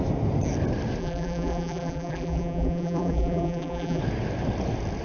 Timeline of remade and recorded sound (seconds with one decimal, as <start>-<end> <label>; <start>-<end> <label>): 0.0-1.0 recorded; 1.0-4.0 remade; 4.0-5.0 recorded